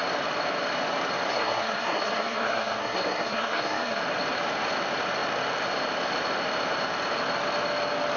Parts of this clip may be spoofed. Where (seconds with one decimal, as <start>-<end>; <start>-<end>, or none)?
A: 1.3-4.0